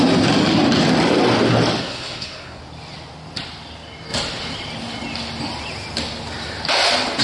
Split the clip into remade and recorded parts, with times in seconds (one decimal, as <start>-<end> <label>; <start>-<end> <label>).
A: 0.0-1.8 recorded; 1.8-2.6 remade; 2.6-7.2 recorded